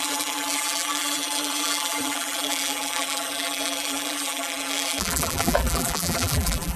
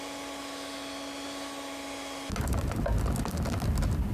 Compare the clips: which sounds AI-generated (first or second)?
first